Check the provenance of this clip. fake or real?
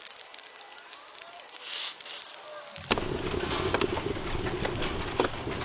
real